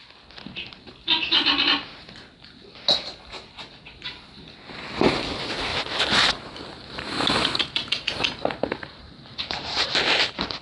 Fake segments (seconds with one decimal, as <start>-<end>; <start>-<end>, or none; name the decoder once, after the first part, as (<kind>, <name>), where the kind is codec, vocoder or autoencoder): 5.7-6.3 (vocoder, BigVGAN v2); 6.7-10.6